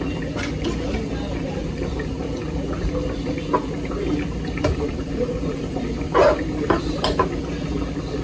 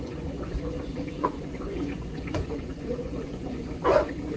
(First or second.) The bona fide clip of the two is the first